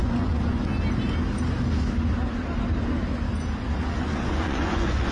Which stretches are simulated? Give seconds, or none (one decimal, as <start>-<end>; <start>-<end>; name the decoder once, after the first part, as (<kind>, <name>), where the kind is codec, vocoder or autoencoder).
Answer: 0.0-0.7 (vocoder, Vocos); 3.8-5.1